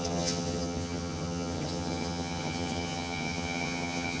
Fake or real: fake